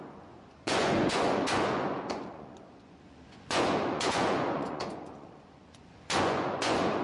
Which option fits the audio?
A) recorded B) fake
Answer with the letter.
B